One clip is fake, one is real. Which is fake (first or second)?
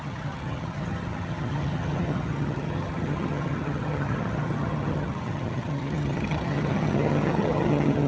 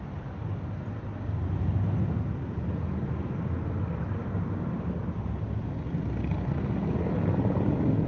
first